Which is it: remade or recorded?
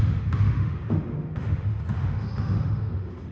remade